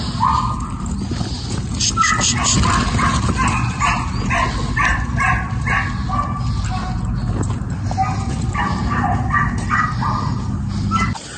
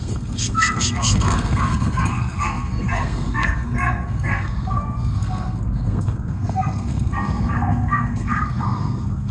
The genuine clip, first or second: first